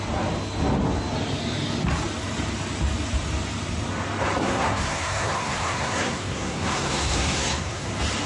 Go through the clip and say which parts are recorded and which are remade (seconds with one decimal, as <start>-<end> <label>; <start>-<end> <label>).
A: 0.0-4.4 recorded; 4.4-7.9 remade; 7.9-8.3 recorded

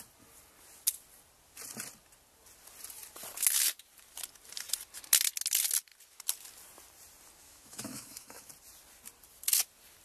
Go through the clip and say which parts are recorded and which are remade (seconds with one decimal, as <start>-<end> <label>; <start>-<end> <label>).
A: 0.0-7.4 recorded; 7.4-8.5 remade; 8.5-10.0 recorded

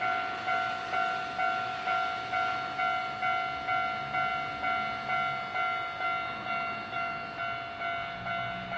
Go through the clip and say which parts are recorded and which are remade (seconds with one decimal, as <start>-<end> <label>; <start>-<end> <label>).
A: 0.0-8.8 recorded

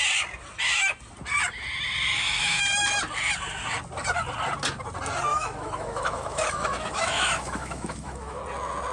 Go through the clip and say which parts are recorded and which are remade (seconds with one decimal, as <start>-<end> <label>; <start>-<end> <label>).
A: 0.0-2.1 recorded; 2.1-2.6 remade; 2.6-5.3 recorded; 5.3-8.4 remade; 8.4-8.9 recorded

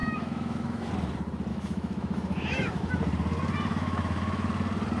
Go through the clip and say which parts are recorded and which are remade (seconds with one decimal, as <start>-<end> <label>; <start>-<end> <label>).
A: 0.0-0.9 remade; 0.9-1.5 recorded; 1.5-2.9 remade; 2.9-3.7 recorded; 3.7-4.5 remade; 4.5-5.0 recorded

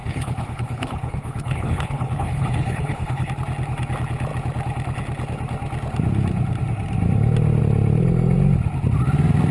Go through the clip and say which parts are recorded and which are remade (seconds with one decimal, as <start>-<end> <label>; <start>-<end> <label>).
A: 0.0-3.3 remade; 3.3-9.5 recorded

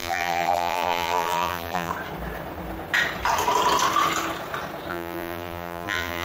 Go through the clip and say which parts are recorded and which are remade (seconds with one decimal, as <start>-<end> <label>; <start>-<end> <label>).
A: 0.0-1.9 remade; 1.9-4.9 recorded; 4.9-6.2 remade